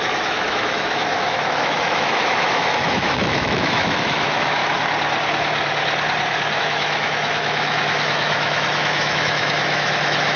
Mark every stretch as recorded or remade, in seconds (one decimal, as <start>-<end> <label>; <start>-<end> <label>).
0.0-4.6 remade; 4.6-6.6 recorded; 6.6-10.4 remade